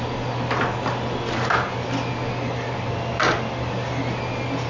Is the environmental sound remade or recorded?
recorded